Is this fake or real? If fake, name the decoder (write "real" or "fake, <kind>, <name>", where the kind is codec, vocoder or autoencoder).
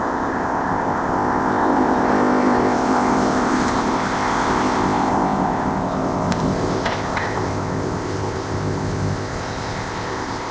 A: fake, codec, ZipCodec